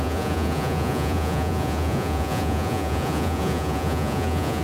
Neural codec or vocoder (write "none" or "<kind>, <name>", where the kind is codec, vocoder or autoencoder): vocoder, Vocos